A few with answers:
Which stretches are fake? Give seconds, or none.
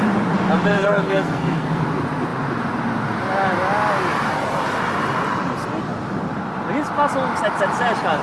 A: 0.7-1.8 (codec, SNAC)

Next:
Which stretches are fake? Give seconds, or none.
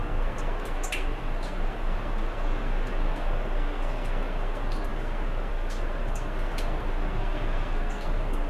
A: 0.0-8.5 (codec, SNAC)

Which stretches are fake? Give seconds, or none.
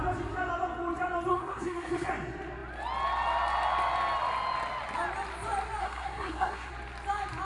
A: 1.3-2.1 (codec, SNAC); 5.8-6.7